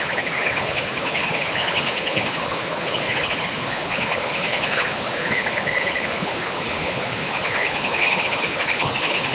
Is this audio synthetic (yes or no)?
yes